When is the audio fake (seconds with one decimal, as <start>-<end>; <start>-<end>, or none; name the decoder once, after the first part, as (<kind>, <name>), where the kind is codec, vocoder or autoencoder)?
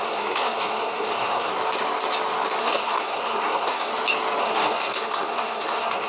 0.0-1.5 (codec, SNAC); 2.6-3.9; 4.4-6.1